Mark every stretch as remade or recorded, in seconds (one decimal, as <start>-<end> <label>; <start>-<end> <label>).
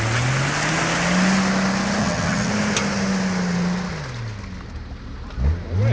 0.0-2.0 recorded; 2.0-2.5 remade; 2.5-5.9 recorded